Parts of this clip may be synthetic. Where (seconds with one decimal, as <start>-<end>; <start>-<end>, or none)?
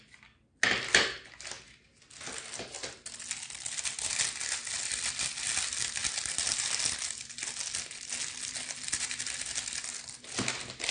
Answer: none